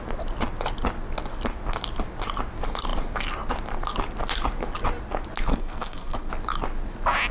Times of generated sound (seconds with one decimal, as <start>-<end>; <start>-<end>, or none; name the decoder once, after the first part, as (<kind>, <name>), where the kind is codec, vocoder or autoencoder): 5.5-6.3 (codec, SNAC)